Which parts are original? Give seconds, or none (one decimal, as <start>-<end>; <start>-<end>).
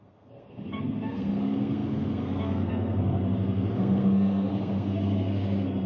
none